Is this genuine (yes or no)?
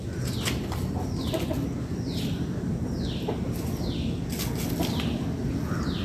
yes